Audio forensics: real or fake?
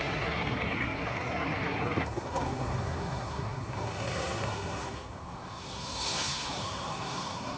fake